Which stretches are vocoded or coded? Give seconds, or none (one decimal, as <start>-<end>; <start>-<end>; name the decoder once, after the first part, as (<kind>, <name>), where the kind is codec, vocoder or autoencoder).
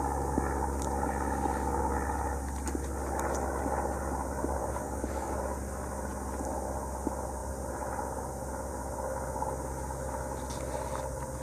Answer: 4.6-5.3 (codec, DAC)